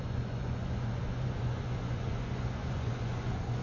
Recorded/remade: remade